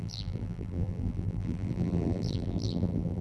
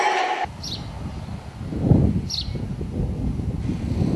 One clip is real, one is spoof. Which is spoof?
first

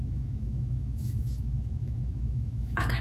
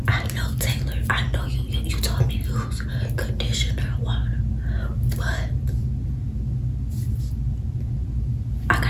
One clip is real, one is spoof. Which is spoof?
first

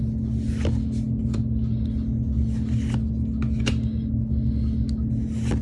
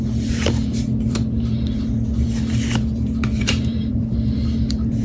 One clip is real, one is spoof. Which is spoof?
second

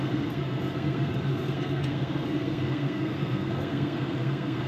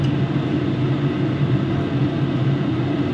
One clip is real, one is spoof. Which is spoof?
first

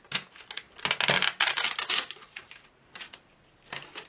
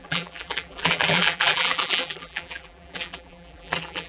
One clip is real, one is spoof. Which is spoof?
second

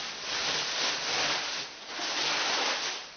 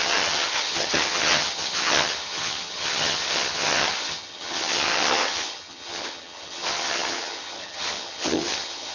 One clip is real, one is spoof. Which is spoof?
second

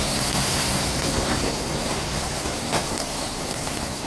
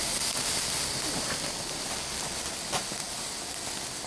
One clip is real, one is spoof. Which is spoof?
first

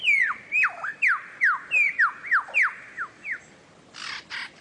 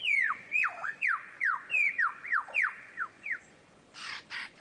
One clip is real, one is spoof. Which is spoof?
second